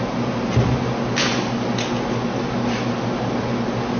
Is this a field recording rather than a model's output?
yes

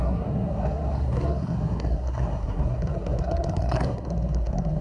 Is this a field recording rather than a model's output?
no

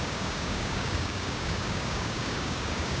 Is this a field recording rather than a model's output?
no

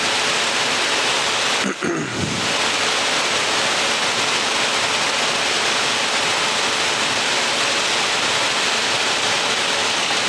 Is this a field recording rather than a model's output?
yes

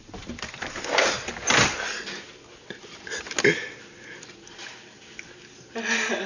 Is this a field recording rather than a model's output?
yes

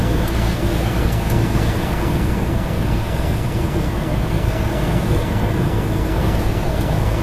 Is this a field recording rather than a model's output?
no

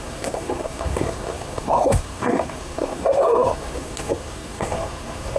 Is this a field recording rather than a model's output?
no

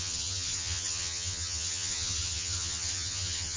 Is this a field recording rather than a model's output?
no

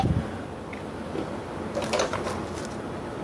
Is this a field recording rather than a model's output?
yes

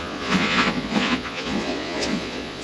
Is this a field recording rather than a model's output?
no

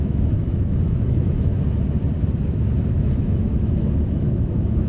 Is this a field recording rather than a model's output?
no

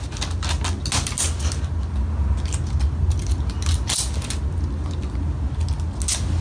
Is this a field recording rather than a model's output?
yes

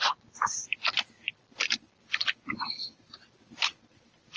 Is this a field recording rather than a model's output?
yes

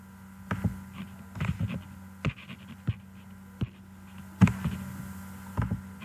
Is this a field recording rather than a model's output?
yes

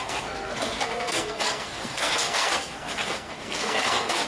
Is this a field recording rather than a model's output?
no